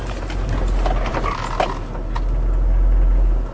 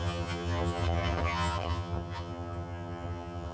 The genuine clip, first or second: first